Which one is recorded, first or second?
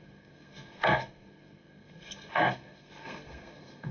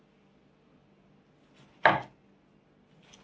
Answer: second